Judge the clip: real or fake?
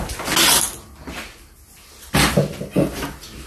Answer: real